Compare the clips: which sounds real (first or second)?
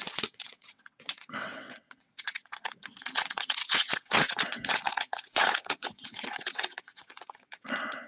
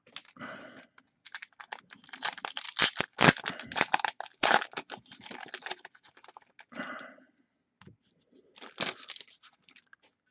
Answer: second